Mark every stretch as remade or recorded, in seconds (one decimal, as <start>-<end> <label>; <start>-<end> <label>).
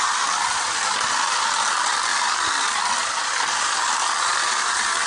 0.0-5.1 recorded